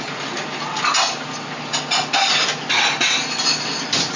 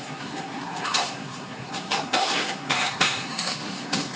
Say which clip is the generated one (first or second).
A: second